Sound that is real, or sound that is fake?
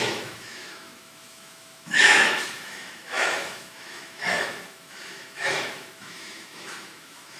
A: fake